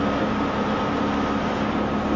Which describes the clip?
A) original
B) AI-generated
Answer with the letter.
A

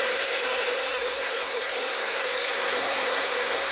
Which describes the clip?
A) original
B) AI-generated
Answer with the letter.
B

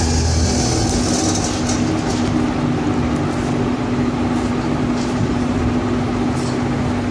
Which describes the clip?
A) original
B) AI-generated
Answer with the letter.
A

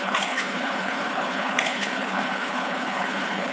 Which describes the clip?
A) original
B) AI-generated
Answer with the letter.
B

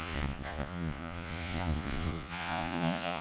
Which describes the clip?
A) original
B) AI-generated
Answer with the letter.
B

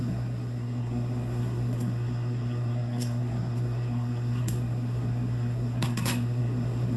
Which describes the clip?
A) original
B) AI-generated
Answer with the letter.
B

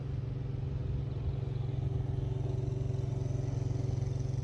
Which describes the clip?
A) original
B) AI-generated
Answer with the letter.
A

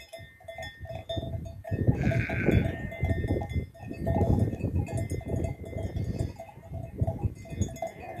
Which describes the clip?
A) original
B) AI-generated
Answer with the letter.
A